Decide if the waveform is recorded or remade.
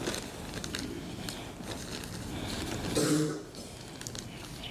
recorded